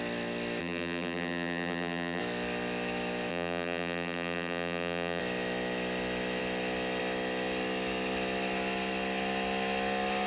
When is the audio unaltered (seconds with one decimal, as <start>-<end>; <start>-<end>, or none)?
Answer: 0.0-0.6; 2.2-3.3; 5.2-10.3